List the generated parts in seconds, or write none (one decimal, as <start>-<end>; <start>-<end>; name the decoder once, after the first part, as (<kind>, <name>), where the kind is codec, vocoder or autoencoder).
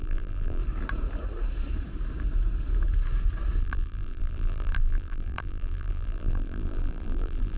0.0-0.6 (vocoder, BigVGAN v2); 3.6-7.6